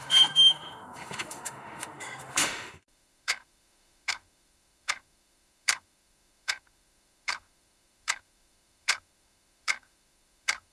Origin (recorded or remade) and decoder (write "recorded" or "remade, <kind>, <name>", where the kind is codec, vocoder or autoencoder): remade, autoencoder, DAC-VAE